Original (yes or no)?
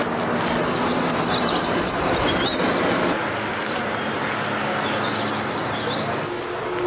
yes